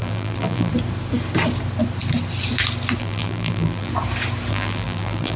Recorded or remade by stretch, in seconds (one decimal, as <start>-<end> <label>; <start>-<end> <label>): 0.0-0.7 remade; 0.7-3.0 recorded; 3.0-3.9 remade; 3.9-4.5 recorded; 4.5-5.4 remade

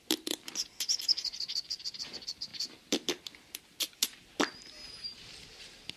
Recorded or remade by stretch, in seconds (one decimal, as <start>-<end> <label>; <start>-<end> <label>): 0.0-6.0 recorded

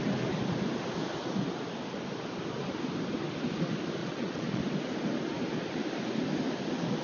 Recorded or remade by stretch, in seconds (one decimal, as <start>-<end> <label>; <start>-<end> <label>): 0.0-4.0 recorded; 4.0-4.6 remade; 4.6-7.0 recorded

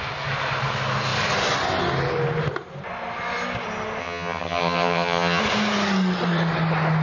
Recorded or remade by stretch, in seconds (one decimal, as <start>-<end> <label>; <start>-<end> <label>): 0.0-4.0 recorded; 4.0-5.4 remade; 5.4-7.0 recorded

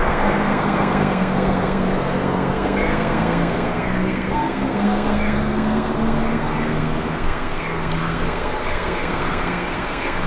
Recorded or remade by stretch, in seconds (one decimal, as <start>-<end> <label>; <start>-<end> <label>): 0.0-10.3 remade

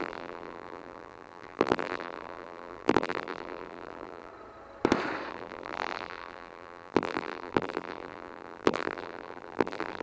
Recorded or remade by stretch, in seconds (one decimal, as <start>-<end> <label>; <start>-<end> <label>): 0.0-4.3 remade; 4.3-5.3 recorded; 5.3-10.0 remade

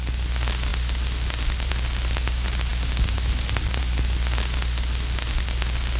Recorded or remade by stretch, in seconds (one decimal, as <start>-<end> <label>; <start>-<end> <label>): 0.0-6.0 recorded

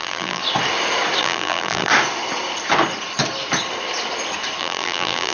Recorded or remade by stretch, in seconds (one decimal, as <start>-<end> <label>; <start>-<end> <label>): 0.0-0.4 remade; 0.4-1.2 recorded; 1.2-1.9 remade; 1.9-4.6 recorded; 4.6-5.3 remade